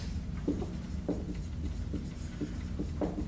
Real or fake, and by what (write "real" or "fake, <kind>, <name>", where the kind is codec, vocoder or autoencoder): fake, vocoder, BigVGAN v2